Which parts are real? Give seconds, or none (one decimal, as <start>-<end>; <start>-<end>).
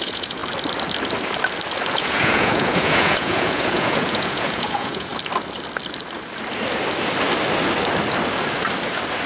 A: 0.4-1.9; 5.1-9.3